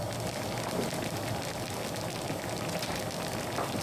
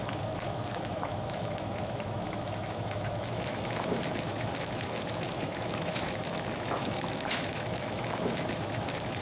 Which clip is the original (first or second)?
first